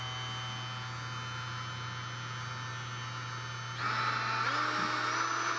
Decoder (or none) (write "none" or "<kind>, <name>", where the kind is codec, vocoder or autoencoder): none